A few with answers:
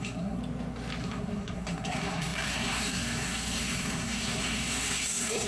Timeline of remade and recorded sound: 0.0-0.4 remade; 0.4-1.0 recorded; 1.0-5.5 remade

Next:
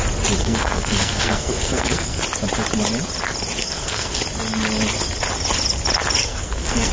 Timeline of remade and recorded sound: 0.0-0.4 recorded; 0.4-2.2 remade; 2.2-3.6 recorded; 3.6-4.2 remade; 4.2-6.2 recorded; 6.2-6.9 remade

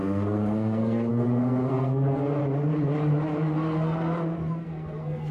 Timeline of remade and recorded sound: 0.0-2.4 remade; 2.4-4.5 recorded; 4.5-5.3 remade